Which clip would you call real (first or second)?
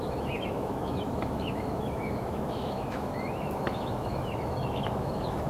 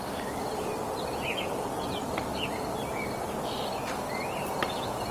second